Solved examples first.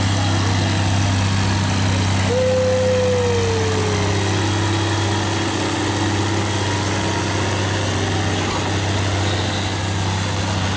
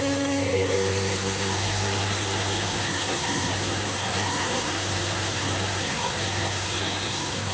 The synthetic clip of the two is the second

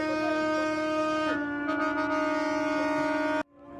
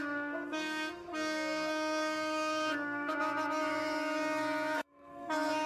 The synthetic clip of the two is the second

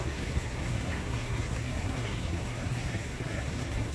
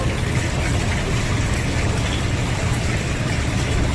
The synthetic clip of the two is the first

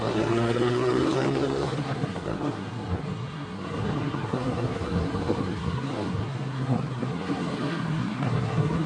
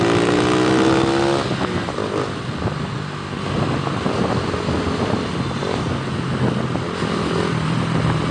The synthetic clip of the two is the first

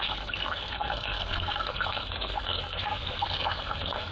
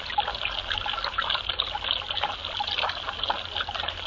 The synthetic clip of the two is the first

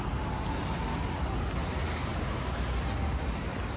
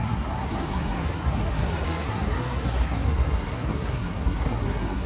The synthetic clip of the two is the second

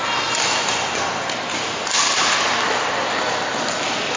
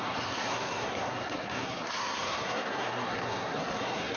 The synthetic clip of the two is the second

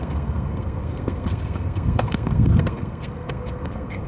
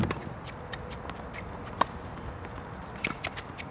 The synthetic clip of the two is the first